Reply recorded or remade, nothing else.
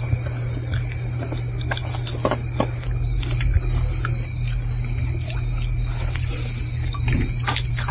recorded